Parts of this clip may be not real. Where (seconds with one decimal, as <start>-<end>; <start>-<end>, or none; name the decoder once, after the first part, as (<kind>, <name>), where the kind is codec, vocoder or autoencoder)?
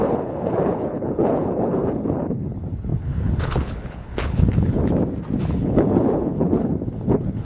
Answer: 0.0-4.8 (codec, HILCodec); 5.4-7.4